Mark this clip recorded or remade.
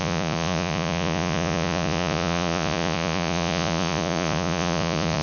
remade